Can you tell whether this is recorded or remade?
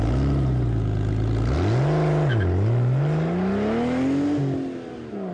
recorded